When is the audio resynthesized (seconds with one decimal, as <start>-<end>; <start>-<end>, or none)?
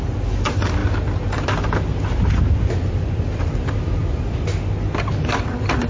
none